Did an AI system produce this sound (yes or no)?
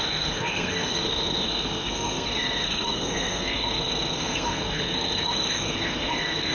yes